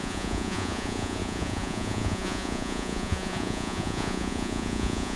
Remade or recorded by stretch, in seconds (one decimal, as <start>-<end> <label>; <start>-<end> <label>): 0.0-5.2 remade